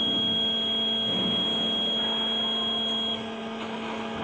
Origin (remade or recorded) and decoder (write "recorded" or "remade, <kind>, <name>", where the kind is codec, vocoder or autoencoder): recorded